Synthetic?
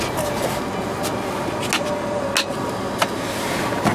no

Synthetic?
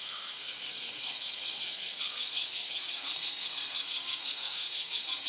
yes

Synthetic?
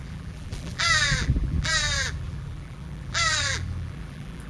yes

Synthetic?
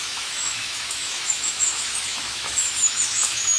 yes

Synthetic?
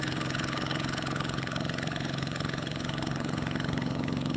yes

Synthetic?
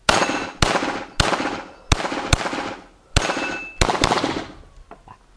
no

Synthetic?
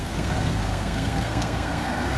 yes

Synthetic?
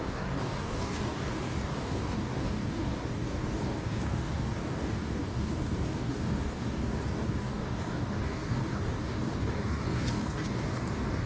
yes